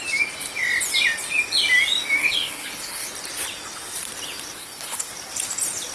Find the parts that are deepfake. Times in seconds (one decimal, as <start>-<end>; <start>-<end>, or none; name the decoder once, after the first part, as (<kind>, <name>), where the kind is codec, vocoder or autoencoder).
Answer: 2.2-3.1 (codec, HILCodec); 4.6-5.1